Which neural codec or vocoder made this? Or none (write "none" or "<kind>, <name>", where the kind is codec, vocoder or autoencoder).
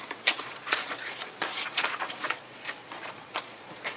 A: vocoder, Vocos